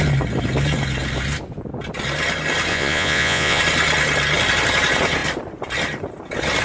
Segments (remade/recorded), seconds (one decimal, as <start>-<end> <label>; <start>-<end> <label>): 0.0-2.7 recorded; 2.7-3.6 remade; 3.6-6.6 recorded